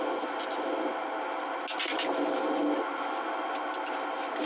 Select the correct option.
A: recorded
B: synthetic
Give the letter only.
A